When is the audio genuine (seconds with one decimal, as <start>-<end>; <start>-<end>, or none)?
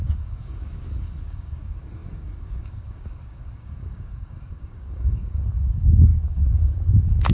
none